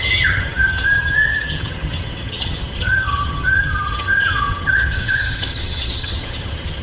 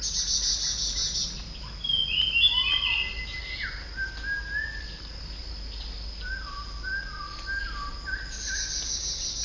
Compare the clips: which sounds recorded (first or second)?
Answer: second